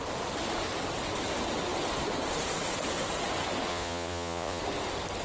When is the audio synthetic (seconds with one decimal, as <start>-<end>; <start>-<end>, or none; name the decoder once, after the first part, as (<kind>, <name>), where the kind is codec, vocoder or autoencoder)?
3.7-4.6 (vocoder, Vocos)